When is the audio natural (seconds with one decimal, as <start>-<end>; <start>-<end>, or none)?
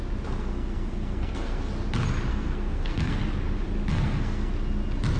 0.0-0.4; 1.7-2.3; 3.2-3.9; 4.5-5.2